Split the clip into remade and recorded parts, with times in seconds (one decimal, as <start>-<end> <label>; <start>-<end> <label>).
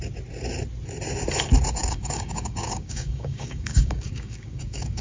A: 0.0-1.8 recorded; 1.8-5.0 remade